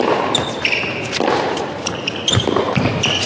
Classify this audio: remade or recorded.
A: remade